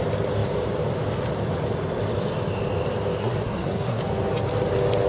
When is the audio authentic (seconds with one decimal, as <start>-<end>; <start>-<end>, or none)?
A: 0.0-3.2; 4.0-5.1